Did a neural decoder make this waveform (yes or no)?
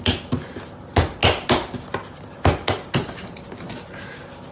no